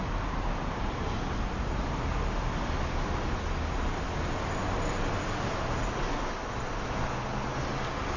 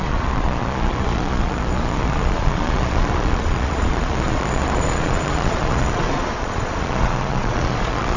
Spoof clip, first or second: second